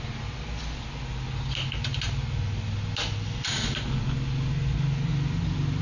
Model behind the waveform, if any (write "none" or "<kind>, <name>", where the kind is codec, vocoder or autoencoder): none